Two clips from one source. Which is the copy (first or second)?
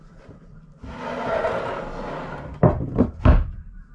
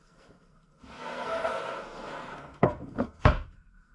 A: second